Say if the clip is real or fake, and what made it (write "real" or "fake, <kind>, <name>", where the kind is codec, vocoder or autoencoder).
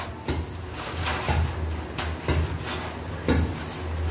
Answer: real